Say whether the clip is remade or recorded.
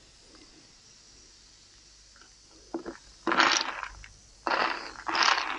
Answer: recorded